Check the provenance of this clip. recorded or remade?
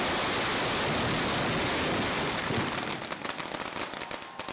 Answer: recorded